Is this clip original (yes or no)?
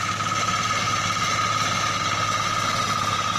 yes